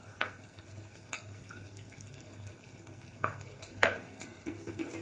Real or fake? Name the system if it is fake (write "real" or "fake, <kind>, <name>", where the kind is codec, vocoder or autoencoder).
fake, codec, SNAC